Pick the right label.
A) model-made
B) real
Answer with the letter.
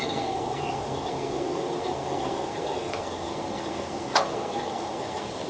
A